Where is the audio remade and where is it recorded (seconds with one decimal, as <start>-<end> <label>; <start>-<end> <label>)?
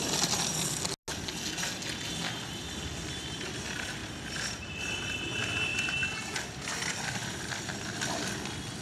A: 0.0-8.8 recorded